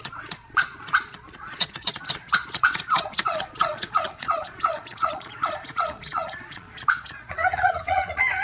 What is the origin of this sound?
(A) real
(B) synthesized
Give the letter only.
B